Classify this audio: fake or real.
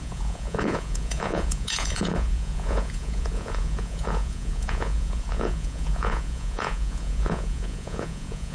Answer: fake